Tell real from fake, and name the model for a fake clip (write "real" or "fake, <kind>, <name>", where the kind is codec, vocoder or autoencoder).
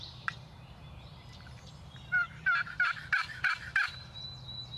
fake, vocoder, BigVGAN v2